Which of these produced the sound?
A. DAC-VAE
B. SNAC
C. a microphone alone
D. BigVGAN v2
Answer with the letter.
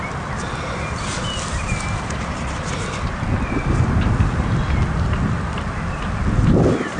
C